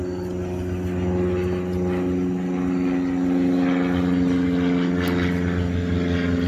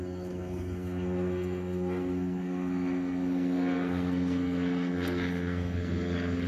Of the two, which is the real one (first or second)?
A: first